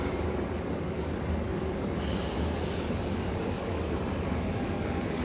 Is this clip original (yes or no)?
no